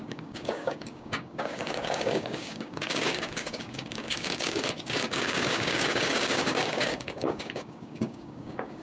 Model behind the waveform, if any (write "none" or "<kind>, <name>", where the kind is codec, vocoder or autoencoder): codec, DAC